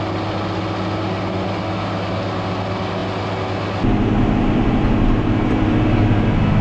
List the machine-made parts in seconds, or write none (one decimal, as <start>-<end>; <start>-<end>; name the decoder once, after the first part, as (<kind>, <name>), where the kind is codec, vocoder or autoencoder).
none